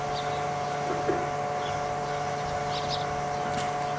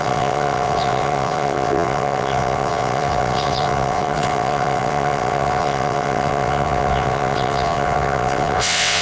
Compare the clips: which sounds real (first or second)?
first